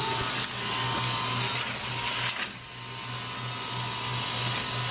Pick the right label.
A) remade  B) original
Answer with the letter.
B